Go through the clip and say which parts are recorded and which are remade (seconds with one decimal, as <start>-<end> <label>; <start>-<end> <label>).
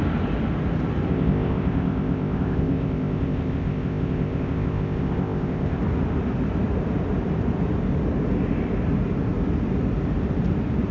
0.0-1.1 recorded; 1.1-5.8 remade; 5.8-10.9 recorded